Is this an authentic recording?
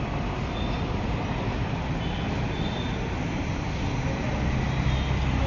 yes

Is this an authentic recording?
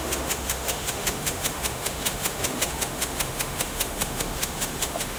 no